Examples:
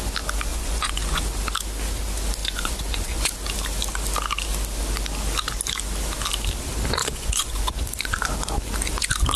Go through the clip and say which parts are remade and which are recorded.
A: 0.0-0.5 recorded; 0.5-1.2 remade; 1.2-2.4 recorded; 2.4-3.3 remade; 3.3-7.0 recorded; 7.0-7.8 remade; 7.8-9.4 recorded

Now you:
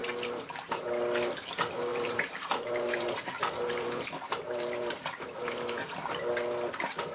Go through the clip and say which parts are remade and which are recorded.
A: 0.0-0.8 remade; 0.8-1.9 recorded; 1.9-6.2 remade; 6.2-7.1 recorded

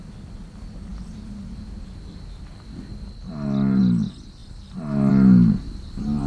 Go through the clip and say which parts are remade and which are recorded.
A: 0.0-6.3 recorded